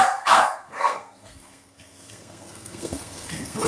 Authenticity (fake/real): fake